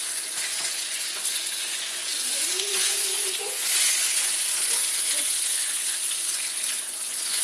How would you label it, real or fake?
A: fake